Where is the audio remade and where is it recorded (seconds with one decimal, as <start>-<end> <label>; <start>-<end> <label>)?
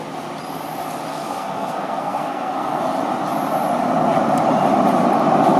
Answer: 0.0-1.1 recorded; 1.1-2.8 remade; 2.8-5.6 recorded